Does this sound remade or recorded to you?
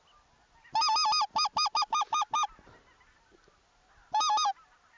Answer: recorded